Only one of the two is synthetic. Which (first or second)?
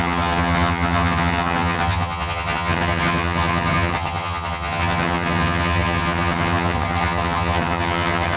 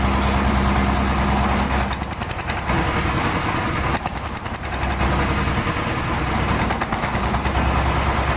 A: first